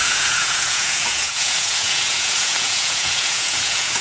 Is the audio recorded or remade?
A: remade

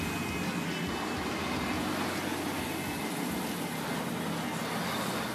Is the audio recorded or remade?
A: recorded